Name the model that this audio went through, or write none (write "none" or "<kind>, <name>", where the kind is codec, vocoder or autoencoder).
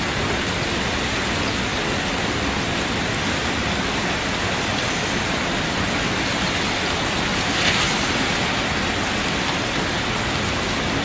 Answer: none